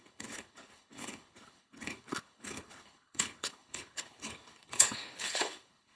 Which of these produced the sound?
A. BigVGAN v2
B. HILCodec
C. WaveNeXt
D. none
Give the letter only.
B